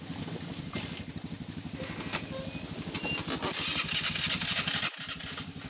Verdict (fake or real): real